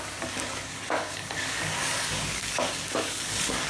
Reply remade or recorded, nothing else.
remade